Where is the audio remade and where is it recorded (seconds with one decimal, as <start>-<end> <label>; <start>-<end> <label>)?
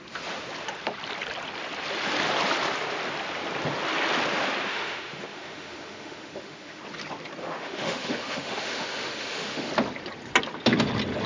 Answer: 0.0-4.7 recorded; 4.7-6.8 remade; 6.8-7.4 recorded; 7.4-9.7 remade; 9.7-11.3 recorded